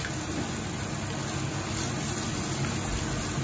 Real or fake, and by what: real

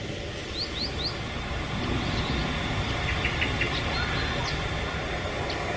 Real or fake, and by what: real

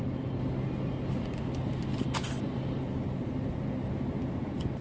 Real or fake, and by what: real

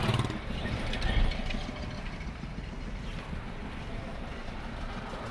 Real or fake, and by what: real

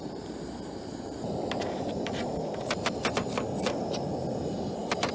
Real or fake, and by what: real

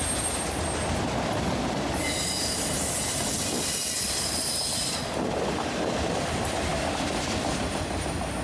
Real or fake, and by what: real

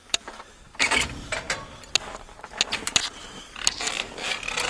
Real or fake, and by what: real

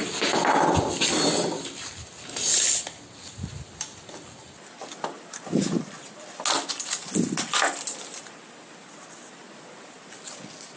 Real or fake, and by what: real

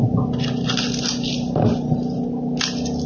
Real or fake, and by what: real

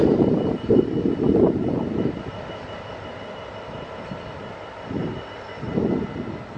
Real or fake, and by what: real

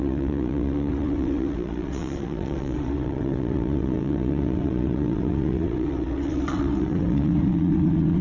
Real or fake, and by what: fake, vocoder, WaveNeXt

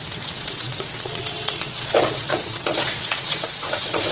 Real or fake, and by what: fake, vocoder, WaveNeXt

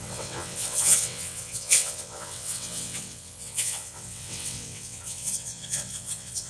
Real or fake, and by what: fake, vocoder, WaveNeXt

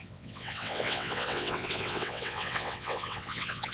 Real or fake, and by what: fake, vocoder, WaveNeXt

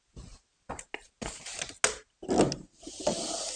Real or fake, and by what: real